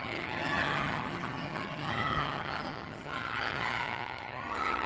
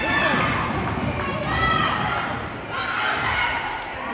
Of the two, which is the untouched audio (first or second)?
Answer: second